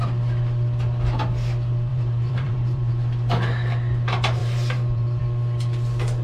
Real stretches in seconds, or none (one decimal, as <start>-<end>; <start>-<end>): 0.0-1.9; 2.9-4.4; 5.2-6.2